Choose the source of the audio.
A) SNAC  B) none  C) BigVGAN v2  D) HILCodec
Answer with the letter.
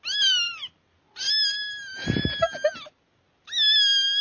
B